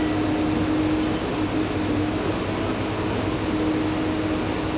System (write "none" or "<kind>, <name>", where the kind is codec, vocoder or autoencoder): none